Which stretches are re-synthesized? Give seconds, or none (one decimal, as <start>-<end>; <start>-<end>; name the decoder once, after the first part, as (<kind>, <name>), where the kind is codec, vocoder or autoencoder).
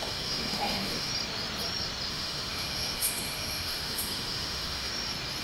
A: 0.0-1.1 (autoencoder, DAC-VAE); 2.1-4.9